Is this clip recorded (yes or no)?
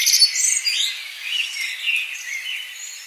yes